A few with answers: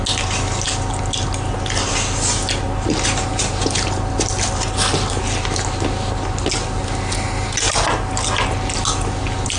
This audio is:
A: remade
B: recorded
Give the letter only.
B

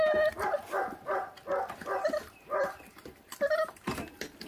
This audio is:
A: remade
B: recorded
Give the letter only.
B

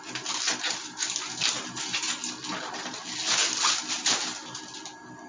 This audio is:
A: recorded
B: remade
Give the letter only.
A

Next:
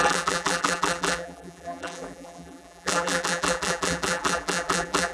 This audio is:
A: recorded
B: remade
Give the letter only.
B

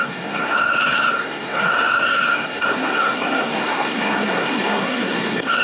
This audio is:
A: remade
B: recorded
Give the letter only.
A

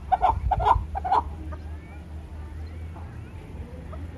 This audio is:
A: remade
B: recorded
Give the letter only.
B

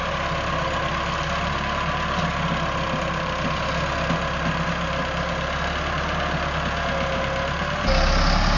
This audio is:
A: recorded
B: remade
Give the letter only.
A